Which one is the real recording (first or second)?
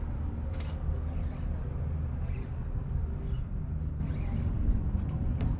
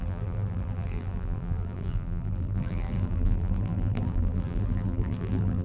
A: first